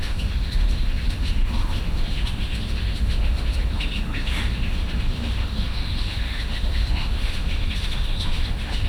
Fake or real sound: fake